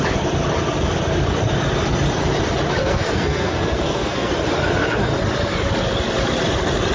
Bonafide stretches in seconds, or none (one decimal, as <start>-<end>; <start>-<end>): 0.0-2.8; 4.3-6.9